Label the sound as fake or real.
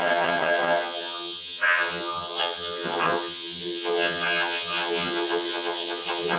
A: fake